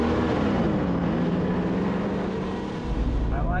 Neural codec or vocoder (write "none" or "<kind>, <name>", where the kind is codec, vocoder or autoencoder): none